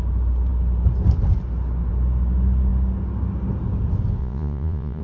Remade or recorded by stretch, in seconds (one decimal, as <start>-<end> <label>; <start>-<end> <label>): 0.0-4.2 recorded; 4.2-5.0 remade